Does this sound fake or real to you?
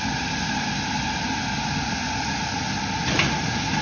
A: real